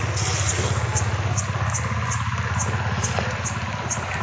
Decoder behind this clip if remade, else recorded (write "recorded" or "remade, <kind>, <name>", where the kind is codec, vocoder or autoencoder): recorded